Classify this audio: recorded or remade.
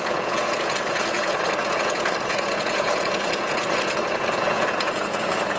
remade